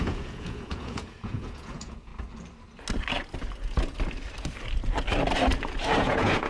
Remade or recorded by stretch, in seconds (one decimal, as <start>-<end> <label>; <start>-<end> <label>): 0.0-2.1 remade; 2.1-6.0 recorded; 6.0-6.5 remade